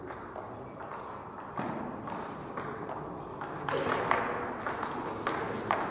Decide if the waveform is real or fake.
real